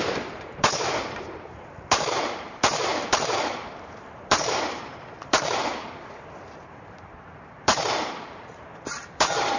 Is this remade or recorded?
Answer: remade